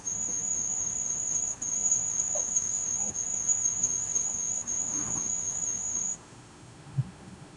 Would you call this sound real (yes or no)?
no